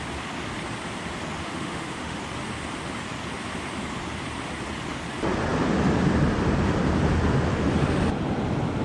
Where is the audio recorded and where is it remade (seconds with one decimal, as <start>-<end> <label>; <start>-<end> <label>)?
0.0-1.4 recorded; 1.4-2.2 remade; 2.2-8.8 recorded